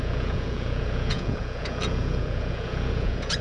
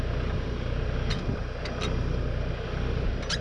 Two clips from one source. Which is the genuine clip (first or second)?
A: second